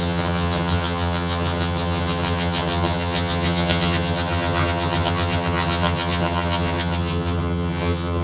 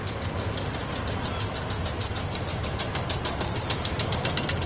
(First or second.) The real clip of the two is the second